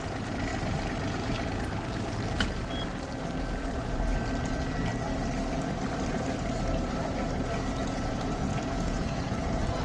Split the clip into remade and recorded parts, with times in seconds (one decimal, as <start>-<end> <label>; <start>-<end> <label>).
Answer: 0.0-7.8 recorded; 7.8-9.8 remade